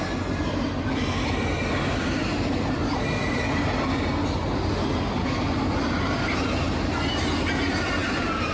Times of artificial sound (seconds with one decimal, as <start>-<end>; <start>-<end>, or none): none